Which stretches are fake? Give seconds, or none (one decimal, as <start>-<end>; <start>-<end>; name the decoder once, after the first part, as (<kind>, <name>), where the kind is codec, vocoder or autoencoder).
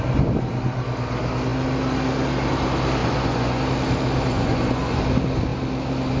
3.0-3.6 (vocoder, Vocos); 4.3-5.0